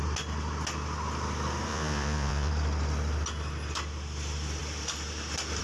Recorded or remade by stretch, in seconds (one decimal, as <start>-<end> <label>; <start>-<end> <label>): 0.0-1.7 recorded; 1.7-2.5 remade; 2.5-5.6 recorded